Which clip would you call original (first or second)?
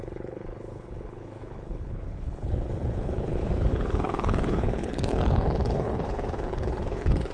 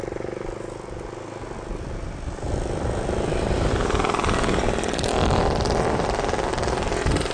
second